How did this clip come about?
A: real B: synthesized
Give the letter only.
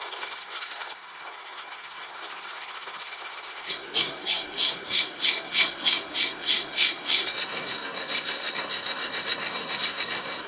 B